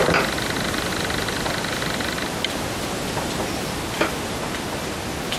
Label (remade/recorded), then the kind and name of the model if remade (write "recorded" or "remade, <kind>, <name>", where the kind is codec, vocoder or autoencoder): recorded